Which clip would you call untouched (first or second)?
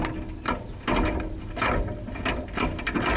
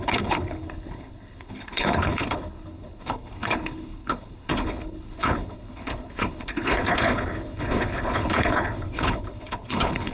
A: first